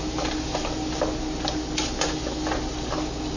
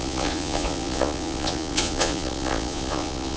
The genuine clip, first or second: first